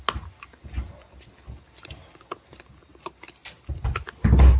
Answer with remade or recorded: recorded